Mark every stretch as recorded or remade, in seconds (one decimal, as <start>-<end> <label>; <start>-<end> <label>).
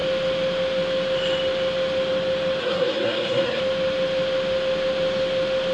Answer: 0.0-2.6 recorded; 2.6-3.6 remade; 3.6-5.7 recorded